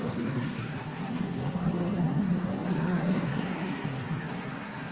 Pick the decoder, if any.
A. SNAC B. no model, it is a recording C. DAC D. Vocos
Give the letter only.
A